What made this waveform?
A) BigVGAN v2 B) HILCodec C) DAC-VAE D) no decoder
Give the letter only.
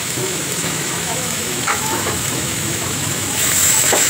C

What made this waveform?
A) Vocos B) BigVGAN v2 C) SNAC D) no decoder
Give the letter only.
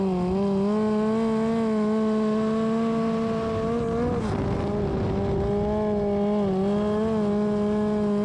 D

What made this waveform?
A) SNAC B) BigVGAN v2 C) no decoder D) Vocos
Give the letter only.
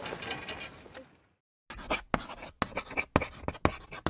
C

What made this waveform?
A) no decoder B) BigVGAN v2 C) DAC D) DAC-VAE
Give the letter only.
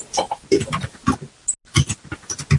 A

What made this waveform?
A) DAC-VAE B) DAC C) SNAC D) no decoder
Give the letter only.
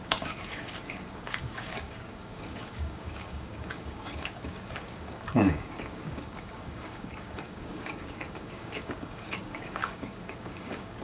B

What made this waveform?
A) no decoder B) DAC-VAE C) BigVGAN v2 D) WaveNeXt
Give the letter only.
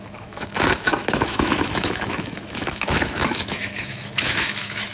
B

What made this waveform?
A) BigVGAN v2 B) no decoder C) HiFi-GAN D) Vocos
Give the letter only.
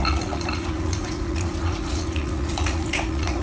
D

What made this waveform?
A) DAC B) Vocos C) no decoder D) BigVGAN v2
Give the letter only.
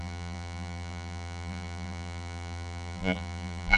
D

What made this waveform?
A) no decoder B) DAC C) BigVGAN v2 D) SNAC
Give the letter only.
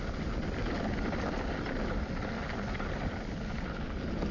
A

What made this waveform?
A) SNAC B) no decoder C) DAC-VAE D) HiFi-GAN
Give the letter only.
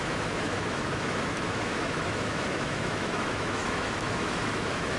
C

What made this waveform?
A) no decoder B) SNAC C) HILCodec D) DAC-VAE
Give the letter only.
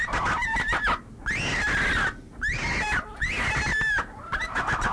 A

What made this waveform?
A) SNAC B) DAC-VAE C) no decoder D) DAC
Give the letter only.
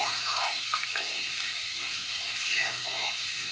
A